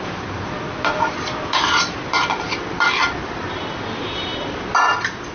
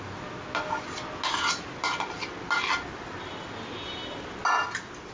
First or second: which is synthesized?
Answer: first